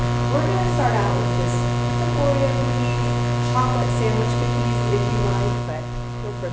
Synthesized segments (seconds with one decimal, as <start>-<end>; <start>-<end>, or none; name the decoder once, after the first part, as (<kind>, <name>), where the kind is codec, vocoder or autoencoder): none

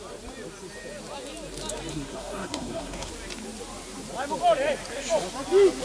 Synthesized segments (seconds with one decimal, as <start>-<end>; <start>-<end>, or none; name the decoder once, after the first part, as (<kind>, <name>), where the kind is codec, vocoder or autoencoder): 1.9-3.1 (codec, SNAC)